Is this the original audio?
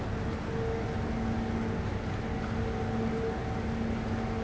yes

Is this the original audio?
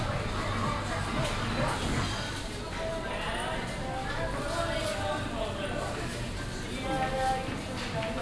yes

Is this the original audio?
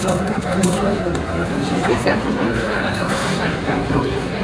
no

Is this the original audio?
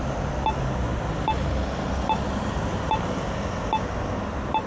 yes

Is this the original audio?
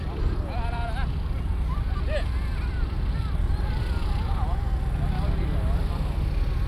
yes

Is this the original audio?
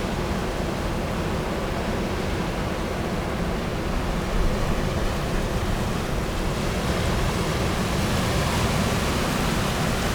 yes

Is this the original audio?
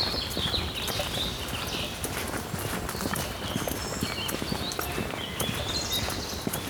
yes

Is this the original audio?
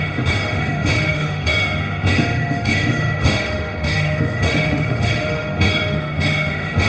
no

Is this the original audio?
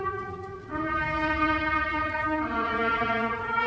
no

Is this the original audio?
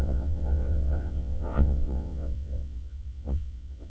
no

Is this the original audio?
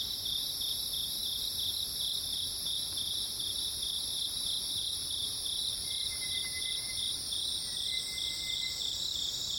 yes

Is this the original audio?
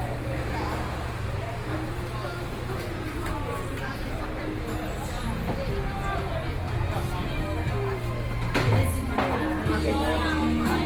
yes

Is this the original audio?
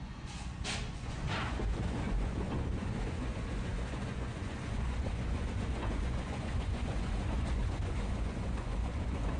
no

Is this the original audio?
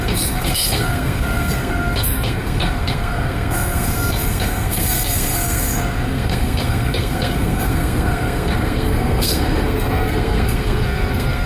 no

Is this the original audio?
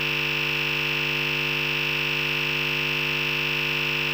yes